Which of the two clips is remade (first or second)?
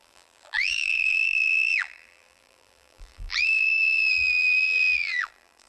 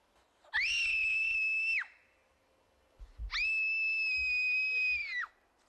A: first